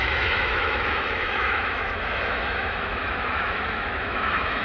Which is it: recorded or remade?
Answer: remade